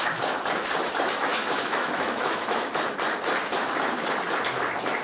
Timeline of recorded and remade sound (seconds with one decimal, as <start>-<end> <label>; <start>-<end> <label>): 0.0-1.3 recorded; 1.3-2.7 remade; 2.7-5.0 recorded